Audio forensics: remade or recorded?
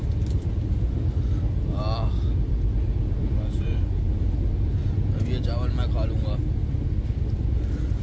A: recorded